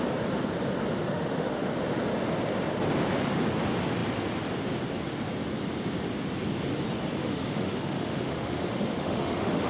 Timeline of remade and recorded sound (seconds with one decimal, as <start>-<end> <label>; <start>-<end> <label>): 0.0-1.0 recorded; 1.0-1.7 remade; 1.7-7.2 recorded; 7.2-9.7 remade